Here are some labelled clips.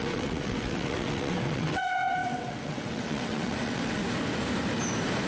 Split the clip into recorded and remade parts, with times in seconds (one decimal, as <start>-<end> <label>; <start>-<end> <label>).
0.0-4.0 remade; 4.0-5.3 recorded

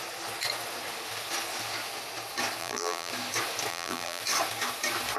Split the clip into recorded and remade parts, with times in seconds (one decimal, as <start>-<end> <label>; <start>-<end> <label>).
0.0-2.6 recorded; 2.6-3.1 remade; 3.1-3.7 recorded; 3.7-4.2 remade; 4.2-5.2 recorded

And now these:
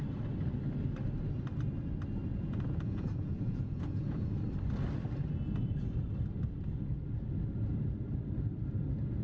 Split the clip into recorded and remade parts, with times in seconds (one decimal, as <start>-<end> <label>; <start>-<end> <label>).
0.0-2.3 recorded; 2.3-4.3 remade; 4.3-9.2 recorded

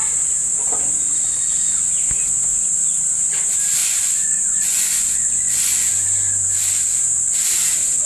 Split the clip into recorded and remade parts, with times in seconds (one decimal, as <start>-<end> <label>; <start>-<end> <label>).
0.0-3.8 recorded; 3.8-5.9 remade; 5.9-8.1 recorded

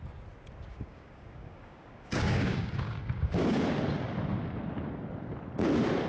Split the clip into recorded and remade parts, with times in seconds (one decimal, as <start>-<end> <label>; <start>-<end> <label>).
0.0-0.7 recorded; 0.7-3.6 remade; 3.6-6.1 recorded

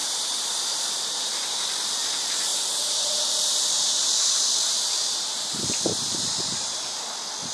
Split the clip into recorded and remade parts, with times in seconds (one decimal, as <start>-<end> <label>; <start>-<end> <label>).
0.0-1.6 remade; 1.6-2.5 recorded; 2.5-7.0 remade; 7.0-7.5 recorded

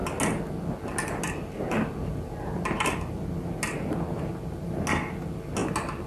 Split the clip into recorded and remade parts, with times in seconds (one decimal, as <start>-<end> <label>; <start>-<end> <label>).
0.0-6.1 recorded